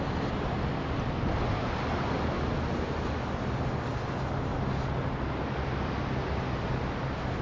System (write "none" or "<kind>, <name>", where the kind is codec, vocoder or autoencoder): none